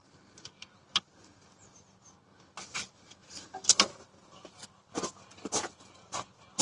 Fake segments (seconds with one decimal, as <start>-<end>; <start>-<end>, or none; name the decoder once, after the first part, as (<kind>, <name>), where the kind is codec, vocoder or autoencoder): none